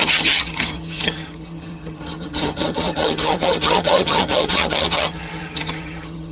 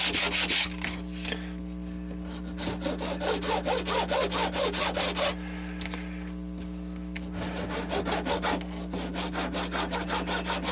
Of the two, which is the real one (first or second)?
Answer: second